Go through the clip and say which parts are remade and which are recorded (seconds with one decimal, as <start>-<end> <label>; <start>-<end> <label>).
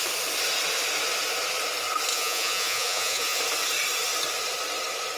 0.0-2.1 recorded; 2.1-3.4 remade; 3.4-5.2 recorded